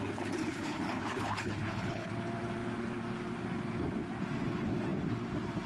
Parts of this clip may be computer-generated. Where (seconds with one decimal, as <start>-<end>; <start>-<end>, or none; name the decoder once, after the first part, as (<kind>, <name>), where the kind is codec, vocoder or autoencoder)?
0.4-2.1 (codec, HILCodec)